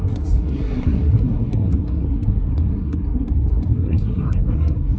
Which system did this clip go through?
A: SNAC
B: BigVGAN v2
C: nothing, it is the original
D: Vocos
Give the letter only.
A